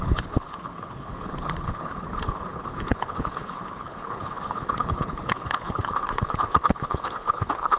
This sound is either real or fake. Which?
fake